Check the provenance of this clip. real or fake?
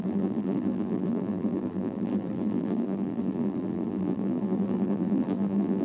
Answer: fake